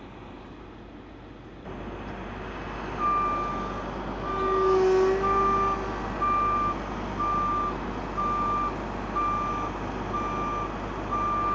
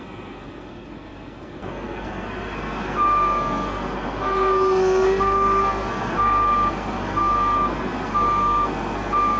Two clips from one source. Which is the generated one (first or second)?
second